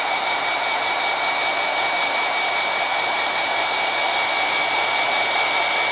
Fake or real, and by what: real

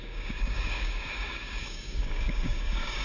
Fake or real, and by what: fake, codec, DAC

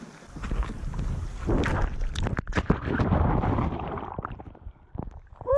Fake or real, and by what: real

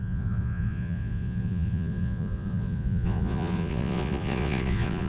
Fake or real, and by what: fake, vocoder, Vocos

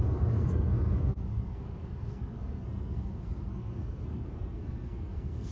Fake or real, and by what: fake, codec, SNAC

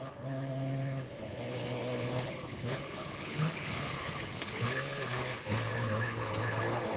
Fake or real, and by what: fake, codec, HILCodec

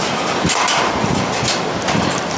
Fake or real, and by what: real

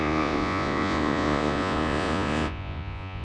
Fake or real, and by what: fake, vocoder, Vocos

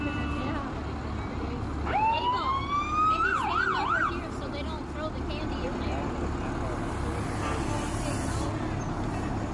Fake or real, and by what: real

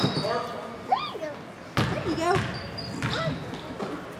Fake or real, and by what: real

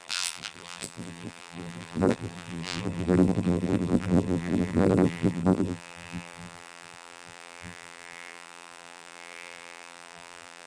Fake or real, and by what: fake, vocoder, BigVGAN v2